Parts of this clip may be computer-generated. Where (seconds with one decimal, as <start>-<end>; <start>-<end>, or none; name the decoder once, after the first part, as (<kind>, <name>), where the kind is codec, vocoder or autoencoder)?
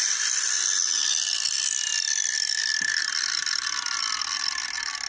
none